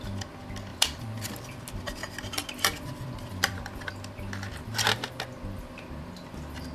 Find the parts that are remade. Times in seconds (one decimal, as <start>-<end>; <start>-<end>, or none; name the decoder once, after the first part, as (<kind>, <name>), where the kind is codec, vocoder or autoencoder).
0.7-1.6 (vocoder, BigVGAN v2); 2.0-3.9